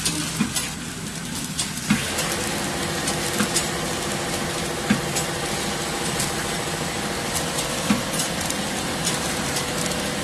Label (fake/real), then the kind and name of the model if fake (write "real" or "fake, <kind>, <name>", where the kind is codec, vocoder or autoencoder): real